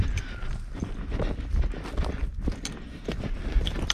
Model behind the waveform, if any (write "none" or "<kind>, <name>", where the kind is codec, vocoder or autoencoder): none